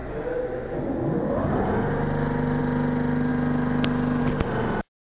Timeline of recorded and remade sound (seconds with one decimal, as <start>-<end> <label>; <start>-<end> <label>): 0.0-5.1 recorded